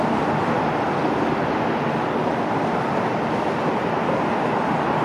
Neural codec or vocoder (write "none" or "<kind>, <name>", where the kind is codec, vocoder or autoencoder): vocoder, BigVGAN v2